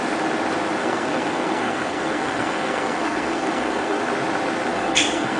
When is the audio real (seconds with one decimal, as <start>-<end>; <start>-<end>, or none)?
0.0-0.8; 4.0-4.7